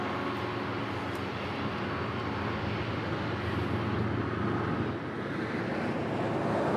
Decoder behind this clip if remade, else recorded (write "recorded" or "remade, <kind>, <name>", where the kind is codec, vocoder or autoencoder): recorded